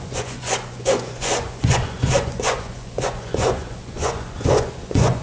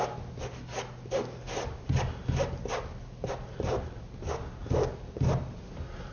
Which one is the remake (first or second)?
first